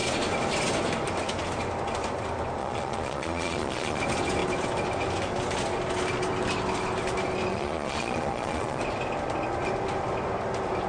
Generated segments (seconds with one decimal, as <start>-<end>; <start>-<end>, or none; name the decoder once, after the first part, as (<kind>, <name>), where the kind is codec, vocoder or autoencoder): 2.6-4.0 (vocoder, Vocos); 7.5-8.8